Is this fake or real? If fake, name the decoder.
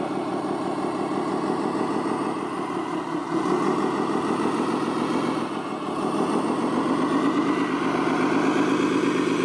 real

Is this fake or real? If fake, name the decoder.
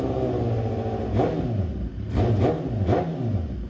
real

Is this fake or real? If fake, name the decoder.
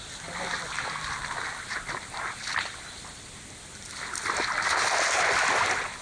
real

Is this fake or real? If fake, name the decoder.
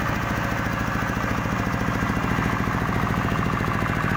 real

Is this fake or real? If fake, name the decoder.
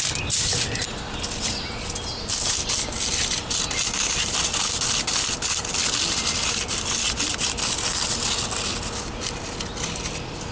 real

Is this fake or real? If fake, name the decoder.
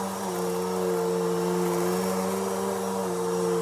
real